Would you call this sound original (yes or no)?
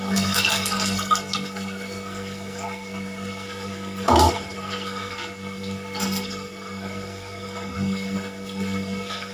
no